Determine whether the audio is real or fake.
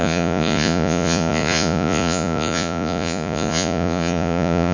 fake